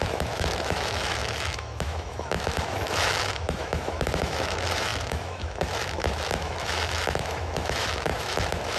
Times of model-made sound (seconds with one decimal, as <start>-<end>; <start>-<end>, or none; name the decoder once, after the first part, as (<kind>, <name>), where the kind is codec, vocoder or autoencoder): 0.0-8.8 (autoencoder, DAC-VAE)